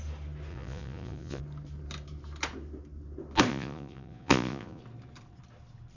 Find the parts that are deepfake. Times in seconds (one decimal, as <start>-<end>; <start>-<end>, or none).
0.5-1.4; 3.5-4.8